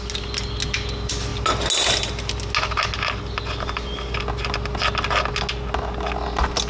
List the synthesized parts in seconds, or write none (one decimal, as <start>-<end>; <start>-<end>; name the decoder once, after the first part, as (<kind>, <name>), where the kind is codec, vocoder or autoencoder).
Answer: none